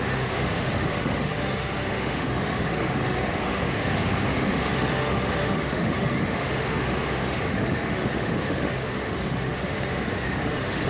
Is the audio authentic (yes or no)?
no